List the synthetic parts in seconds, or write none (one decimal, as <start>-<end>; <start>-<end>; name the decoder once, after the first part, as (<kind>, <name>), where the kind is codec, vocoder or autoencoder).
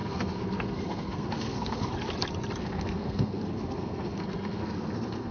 0.0-1.9 (codec, SNAC); 2.6-5.3